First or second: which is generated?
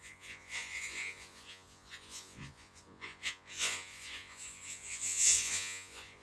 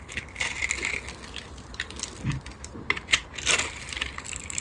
first